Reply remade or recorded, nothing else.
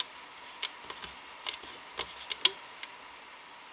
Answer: recorded